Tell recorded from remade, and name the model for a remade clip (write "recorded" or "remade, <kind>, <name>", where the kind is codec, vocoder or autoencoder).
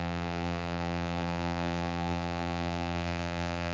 remade, vocoder, BigVGAN v2